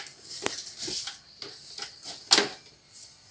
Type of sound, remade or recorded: recorded